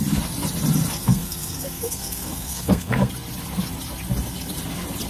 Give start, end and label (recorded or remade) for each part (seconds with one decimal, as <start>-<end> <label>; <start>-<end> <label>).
0.0-1.0 recorded; 1.0-3.1 remade; 3.1-5.1 recorded